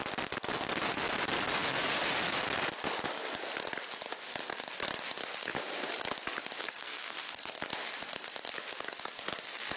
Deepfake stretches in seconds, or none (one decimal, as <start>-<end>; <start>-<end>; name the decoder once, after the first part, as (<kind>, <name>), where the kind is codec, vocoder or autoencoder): 6.6-7.6 (codec, SNAC)

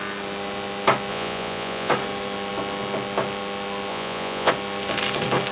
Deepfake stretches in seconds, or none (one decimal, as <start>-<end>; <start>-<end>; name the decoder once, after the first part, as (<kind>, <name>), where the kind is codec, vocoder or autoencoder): 1.1-1.9 (vocoder, Vocos); 3.9-4.5

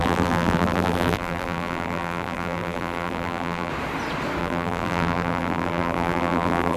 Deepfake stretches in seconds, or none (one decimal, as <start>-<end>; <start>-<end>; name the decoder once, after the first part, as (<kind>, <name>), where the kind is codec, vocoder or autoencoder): 0.0-3.7 (vocoder, BigVGAN v2); 4.4-6.8